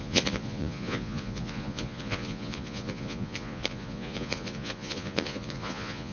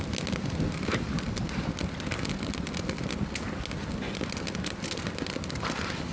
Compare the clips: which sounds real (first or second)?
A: second